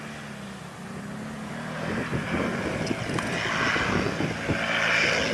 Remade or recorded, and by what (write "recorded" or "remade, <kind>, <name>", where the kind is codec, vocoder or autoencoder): recorded